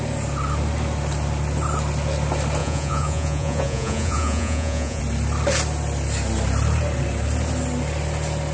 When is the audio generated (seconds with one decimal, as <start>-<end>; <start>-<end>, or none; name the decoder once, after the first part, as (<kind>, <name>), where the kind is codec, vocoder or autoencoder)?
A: 2.6-5.0 (vocoder, Vocos)